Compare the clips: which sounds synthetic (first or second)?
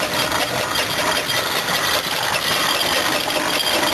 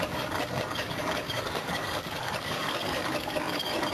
second